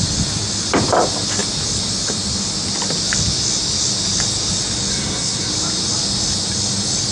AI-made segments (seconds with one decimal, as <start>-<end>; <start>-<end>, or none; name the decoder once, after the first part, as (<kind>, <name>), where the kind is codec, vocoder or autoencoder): 4.9-5.5 (codec, SNAC)